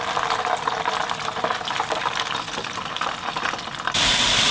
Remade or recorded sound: recorded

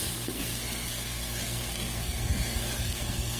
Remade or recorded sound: remade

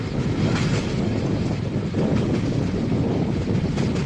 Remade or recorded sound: recorded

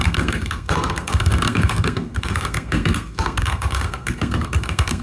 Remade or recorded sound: remade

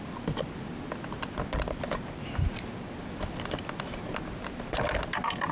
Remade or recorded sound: recorded